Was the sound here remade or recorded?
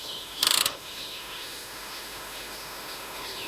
remade